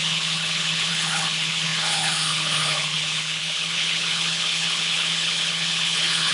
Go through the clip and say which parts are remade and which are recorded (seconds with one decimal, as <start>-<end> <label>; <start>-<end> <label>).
0.0-6.3 remade